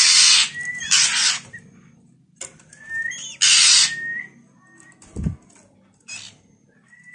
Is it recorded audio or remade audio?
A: recorded